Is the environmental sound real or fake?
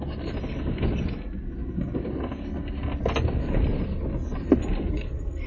real